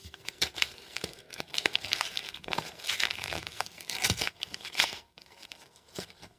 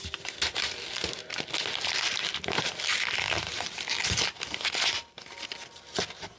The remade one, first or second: first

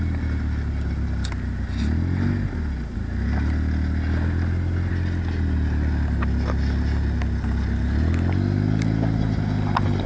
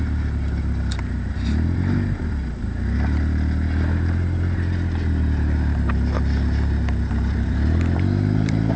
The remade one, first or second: second